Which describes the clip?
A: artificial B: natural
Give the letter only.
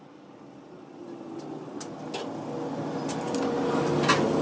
B